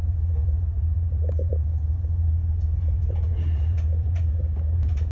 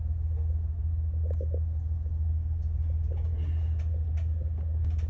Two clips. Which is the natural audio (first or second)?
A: second